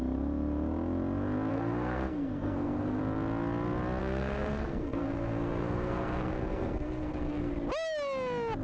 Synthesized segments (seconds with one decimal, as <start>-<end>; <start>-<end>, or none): 1.5-3.0; 4.0-7.5